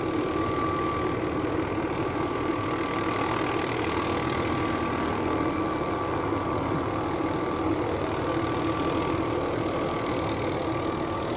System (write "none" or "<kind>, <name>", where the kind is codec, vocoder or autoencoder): none